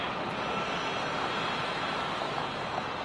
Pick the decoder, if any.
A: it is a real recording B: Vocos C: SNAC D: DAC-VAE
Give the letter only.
A